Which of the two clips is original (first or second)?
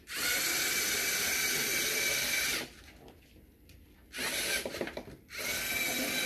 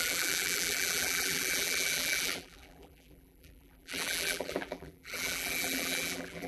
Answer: first